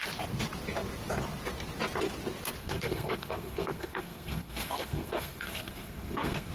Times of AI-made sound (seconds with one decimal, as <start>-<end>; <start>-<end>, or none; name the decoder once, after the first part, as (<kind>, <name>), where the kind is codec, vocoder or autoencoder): 2.6-6.5 (codec, SNAC)